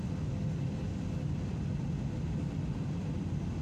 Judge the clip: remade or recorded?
recorded